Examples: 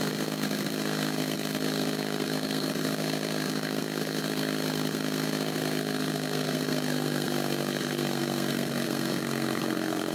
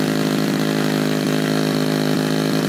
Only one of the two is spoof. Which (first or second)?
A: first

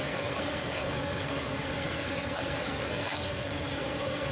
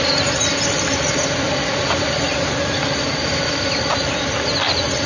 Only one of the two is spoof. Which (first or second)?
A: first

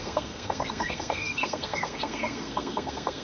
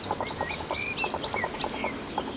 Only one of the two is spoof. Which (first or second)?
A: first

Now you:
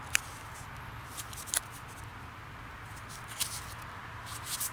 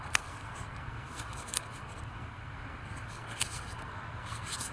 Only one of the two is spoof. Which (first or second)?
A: second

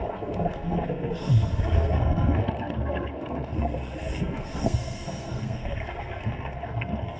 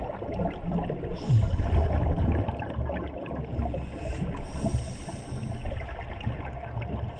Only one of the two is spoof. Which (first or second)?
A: first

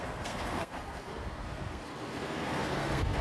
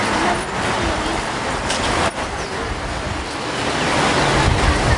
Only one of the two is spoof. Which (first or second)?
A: first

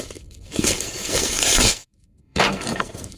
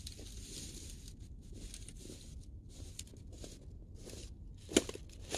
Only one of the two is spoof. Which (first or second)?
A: first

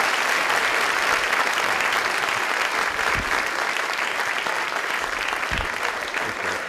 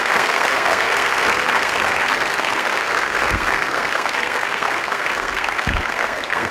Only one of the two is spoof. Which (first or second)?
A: second